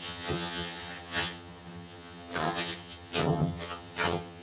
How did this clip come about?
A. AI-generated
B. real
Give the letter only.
A